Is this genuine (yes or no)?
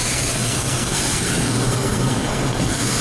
no